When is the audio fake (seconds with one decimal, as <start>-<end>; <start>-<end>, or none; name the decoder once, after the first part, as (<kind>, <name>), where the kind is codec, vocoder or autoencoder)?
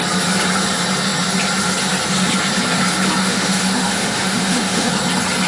3.2-4.9 (autoencoder, DAC-VAE)